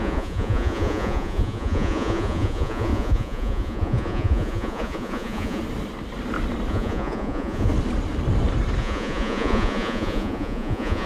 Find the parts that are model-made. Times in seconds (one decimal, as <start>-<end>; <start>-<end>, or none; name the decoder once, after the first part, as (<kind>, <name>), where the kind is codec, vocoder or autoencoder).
0.0-5.6 (vocoder, Vocos); 6.7-7.7; 8.8-11.1